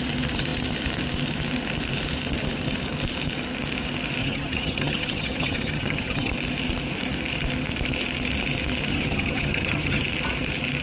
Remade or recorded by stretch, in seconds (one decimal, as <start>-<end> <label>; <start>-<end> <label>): 0.0-4.2 recorded; 4.2-6.3 remade; 6.3-8.9 recorded; 8.9-10.0 remade; 10.0-10.8 recorded